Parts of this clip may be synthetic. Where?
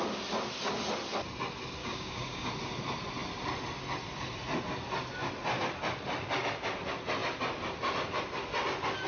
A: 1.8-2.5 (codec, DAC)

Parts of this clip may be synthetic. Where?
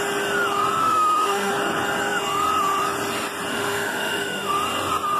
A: 0.8-1.5 (autoencoder, DAC-VAE); 3.5-4.5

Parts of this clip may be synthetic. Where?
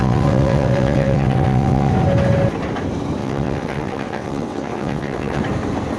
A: 0.0-1.9 (vocoder, WaveNeXt); 3.2-5.4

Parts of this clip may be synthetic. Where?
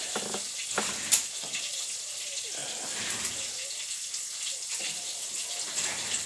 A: none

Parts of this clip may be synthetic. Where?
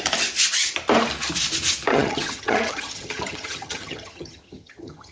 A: 1.9-5.1 (vocoder, HiFi-GAN)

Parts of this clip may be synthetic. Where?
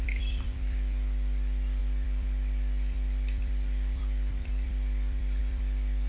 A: 0.0-6.1 (vocoder, BigVGAN v2)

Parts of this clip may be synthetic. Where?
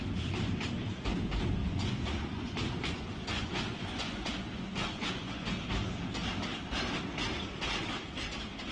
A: 1.6-5.5 (vocoder, Vocos)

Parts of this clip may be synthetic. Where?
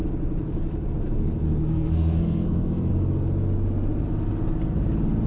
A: 1.6-2.9 (codec, SNAC)